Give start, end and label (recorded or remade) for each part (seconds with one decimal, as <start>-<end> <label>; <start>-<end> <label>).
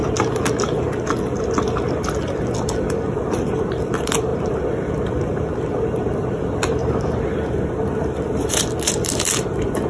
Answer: 0.0-1.9 recorded; 1.9-9.9 remade